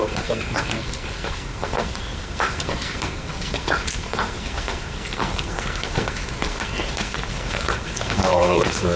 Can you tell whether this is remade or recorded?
remade